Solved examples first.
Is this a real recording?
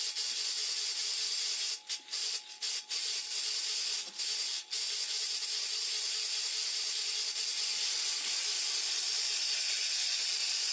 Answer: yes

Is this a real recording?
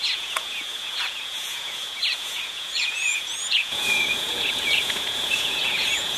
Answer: no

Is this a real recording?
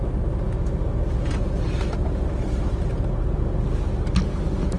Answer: yes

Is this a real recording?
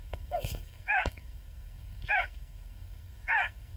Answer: no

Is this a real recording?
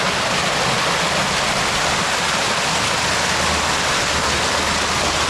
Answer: yes